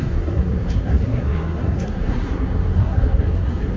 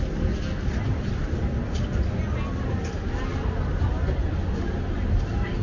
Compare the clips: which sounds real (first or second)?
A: second